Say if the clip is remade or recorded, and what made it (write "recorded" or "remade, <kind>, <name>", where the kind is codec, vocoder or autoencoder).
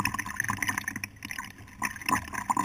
recorded